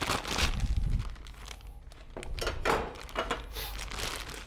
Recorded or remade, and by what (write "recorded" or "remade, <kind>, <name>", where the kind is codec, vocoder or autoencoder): recorded